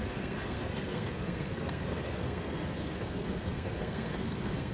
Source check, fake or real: fake